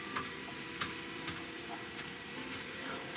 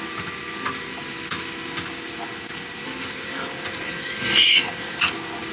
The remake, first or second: first